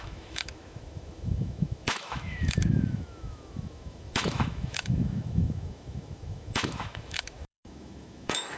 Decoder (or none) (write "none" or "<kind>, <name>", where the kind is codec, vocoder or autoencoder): autoencoder, DAC-VAE